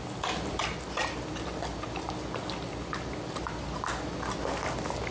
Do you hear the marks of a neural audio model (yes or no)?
no